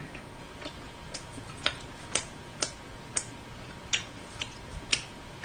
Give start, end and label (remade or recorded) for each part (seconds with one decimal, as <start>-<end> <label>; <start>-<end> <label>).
0.0-5.4 remade